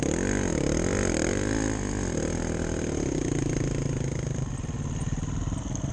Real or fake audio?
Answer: real